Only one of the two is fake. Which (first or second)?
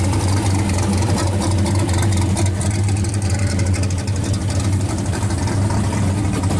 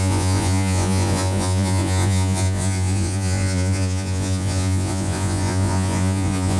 second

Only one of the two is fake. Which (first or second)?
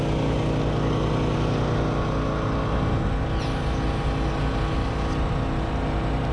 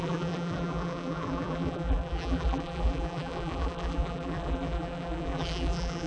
second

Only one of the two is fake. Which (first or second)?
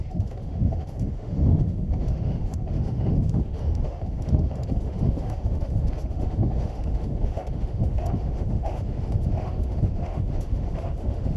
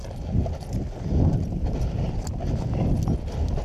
first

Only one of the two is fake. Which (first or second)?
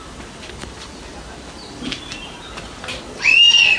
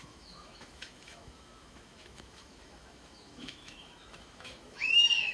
second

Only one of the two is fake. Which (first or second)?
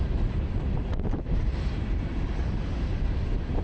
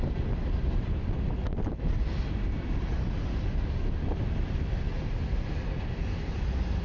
first